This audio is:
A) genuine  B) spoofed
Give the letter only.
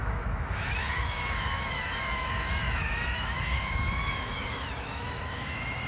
B